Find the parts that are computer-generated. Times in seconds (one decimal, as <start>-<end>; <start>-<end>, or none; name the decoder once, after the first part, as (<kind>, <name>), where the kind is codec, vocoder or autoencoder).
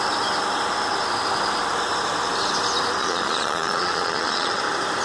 3.0-4.6 (vocoder, Vocos)